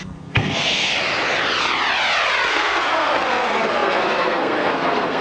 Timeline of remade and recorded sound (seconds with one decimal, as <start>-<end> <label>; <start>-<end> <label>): 0.0-0.9 remade; 0.9-2.5 recorded; 2.5-5.2 remade